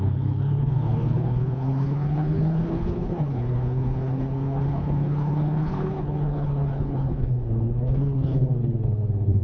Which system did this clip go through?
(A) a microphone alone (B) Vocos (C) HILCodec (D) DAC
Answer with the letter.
C